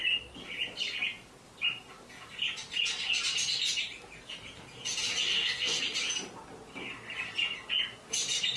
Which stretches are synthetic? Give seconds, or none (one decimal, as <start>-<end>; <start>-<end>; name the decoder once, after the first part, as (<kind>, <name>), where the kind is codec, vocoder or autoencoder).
5.3-5.8 (codec, SNAC)